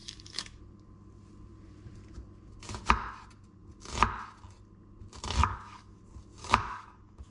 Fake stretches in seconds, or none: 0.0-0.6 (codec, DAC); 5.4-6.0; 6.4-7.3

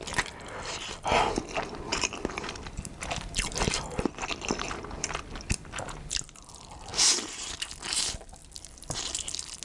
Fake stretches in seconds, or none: 1.9-3.7 (vocoder, BigVGAN v2)

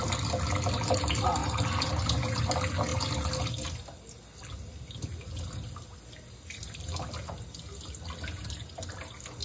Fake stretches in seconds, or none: 1.4-2.4 (vocoder, BigVGAN v2)

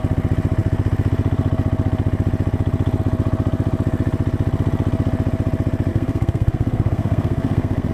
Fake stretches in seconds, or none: 5.9-7.9 (codec, SNAC)

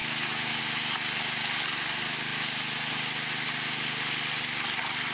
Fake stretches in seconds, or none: 0.0-0.6 (autoencoder, DAC-VAE)

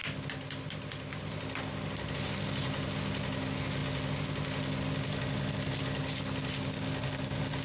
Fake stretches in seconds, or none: none

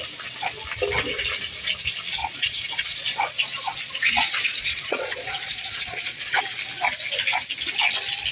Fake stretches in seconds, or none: 2.2-6.4 (vocoder, Vocos)